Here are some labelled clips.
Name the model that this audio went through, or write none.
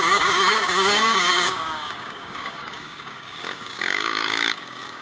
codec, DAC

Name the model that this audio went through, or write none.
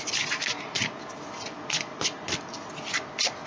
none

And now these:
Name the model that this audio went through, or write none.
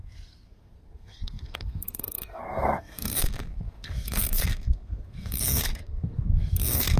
codec, SNAC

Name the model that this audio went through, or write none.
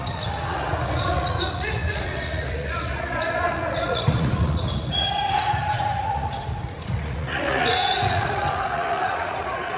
vocoder, Vocos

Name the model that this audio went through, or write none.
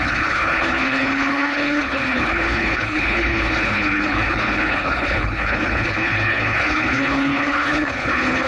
codec, HILCodec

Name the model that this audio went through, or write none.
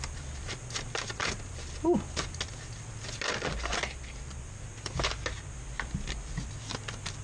none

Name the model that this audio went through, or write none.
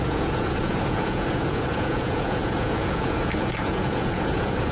vocoder, Vocos